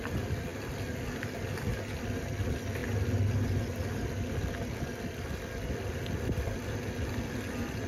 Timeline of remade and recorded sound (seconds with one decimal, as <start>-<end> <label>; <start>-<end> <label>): 0.0-7.9 recorded